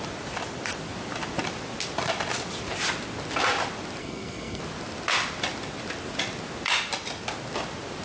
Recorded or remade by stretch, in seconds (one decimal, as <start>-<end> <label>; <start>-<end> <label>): 0.0-4.0 recorded; 4.0-4.6 remade; 4.6-8.0 recorded